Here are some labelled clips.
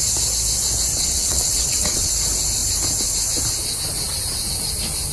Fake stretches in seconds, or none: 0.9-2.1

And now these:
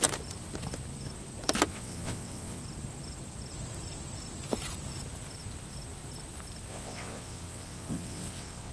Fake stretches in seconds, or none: 1.7-2.6; 6.7-8.7